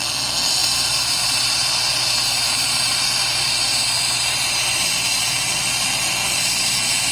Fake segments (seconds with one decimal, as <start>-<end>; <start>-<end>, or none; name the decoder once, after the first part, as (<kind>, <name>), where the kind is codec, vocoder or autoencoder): 0.6-4.9 (vocoder, BigVGAN v2)